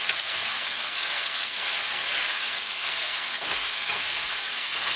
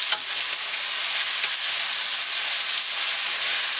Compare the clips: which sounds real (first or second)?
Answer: second